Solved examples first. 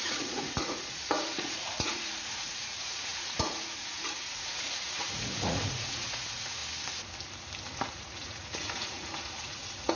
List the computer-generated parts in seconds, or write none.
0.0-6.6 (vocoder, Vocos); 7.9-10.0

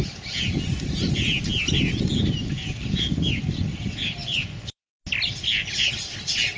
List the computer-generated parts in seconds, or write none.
4.2-4.9 (vocoder, Vocos)

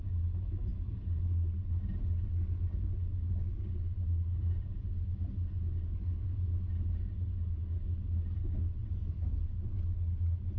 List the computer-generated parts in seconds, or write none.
none

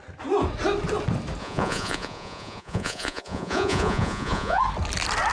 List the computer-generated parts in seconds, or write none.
1.4-4.6 (vocoder, Vocos)

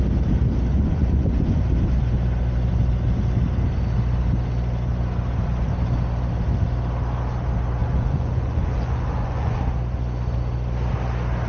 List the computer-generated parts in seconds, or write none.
0.7-1.6 (vocoder, Vocos); 7.8-9.6